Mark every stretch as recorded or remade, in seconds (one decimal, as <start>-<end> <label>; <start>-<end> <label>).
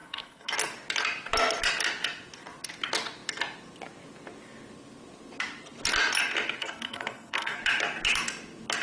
0.0-0.5 remade; 0.5-6.6 recorded; 6.6-7.6 remade; 7.6-8.8 recorded